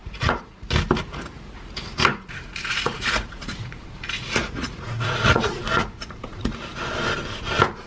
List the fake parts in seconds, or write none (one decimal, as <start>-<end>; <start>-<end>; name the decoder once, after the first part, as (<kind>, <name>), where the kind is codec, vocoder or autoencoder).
0.0-0.7 (vocoder, Vocos); 2.1-6.8